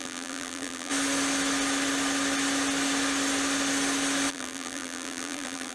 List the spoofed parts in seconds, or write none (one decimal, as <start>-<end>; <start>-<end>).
0.0-0.9; 4.3-5.7